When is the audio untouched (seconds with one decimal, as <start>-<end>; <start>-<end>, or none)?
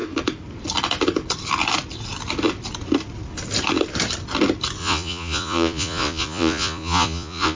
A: 0.0-4.8